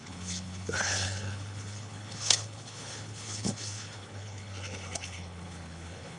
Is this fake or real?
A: fake